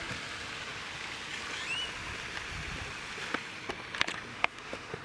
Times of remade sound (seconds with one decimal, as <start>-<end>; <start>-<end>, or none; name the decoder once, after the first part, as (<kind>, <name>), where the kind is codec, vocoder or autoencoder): 4.3-5.0 (autoencoder, DAC-VAE)